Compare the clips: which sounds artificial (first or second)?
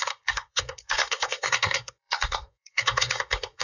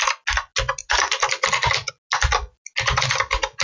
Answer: first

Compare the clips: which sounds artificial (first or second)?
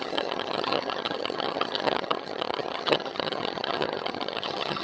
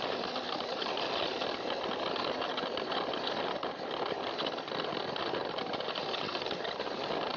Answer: first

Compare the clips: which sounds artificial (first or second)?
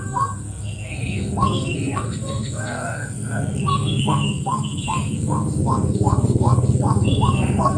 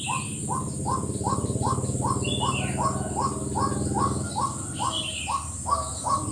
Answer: first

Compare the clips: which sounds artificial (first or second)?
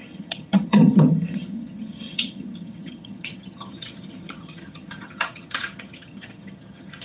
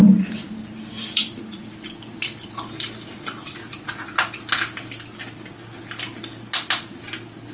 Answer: first